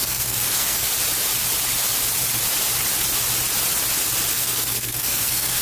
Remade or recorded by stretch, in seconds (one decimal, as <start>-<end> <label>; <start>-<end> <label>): 0.0-0.9 remade; 0.9-4.3 recorded; 4.3-5.6 remade